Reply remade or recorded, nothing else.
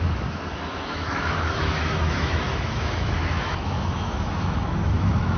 remade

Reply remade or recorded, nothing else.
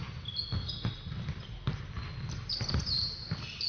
recorded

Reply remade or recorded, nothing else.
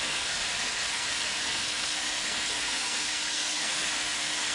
remade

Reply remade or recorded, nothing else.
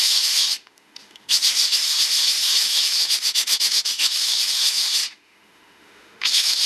remade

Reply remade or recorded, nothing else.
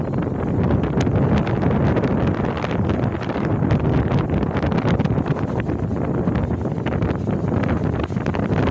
recorded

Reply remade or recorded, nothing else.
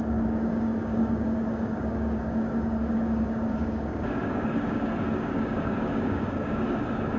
remade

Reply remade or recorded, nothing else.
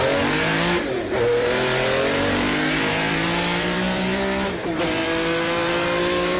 remade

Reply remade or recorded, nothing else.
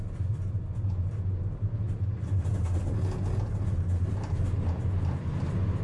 recorded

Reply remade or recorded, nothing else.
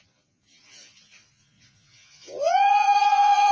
remade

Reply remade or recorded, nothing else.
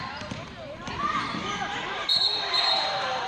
remade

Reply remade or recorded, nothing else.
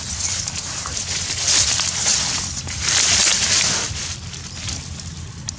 recorded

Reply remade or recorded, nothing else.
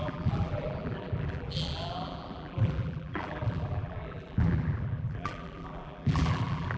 remade